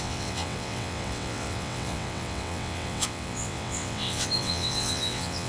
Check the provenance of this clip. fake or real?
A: fake